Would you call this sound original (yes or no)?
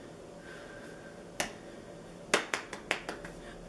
yes